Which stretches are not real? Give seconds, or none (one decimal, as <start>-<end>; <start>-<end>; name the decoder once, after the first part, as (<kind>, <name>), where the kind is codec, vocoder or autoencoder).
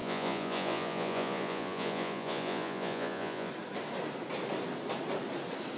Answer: 0.0-3.5 (vocoder, Vocos)